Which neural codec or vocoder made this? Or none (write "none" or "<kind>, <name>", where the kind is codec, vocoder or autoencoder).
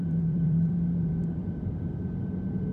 vocoder, BigVGAN v2